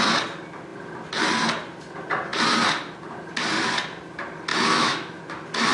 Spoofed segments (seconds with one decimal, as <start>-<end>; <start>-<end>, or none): 4.5-5.2